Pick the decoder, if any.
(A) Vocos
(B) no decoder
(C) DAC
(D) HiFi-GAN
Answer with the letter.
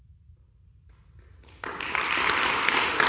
B